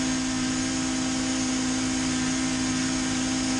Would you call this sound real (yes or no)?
yes